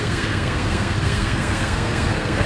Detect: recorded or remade remade